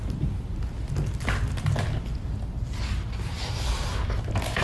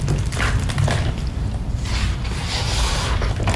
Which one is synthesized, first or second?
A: second